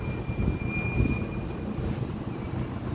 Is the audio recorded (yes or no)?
yes